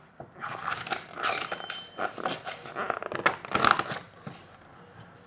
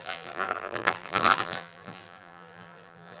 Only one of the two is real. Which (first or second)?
first